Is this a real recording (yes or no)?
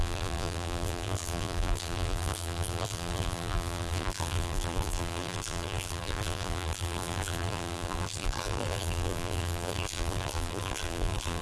no